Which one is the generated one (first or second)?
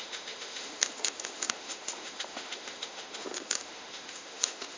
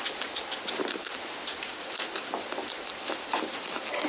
first